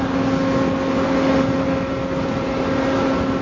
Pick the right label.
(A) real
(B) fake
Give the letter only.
A